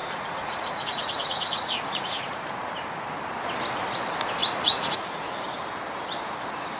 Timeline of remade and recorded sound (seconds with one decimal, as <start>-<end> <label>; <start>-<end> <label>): 0.0-2.4 remade; 2.4-4.4 recorded; 4.4-5.3 remade; 5.3-6.8 recorded